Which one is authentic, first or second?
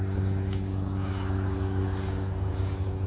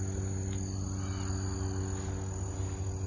second